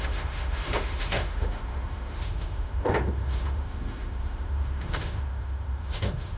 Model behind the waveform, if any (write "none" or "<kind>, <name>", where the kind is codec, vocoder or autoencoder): autoencoder, DAC-VAE